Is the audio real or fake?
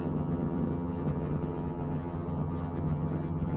fake